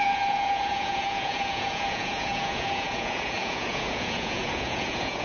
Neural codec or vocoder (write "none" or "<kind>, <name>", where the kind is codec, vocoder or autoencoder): vocoder, Vocos